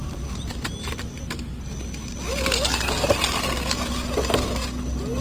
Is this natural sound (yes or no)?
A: yes